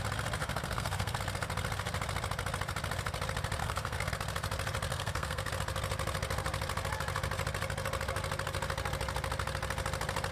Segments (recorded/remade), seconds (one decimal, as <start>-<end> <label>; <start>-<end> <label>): 0.0-0.4 recorded; 0.4-1.2 remade; 1.2-3.6 recorded; 3.6-4.1 remade; 4.1-4.9 recorded; 4.9-5.5 remade; 5.5-10.3 recorded